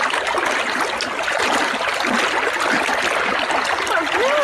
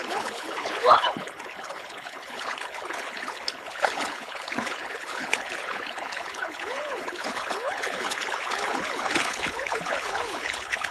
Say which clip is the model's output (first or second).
second